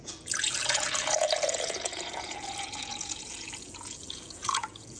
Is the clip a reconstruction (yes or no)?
yes